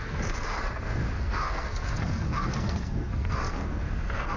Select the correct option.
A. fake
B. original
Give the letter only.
A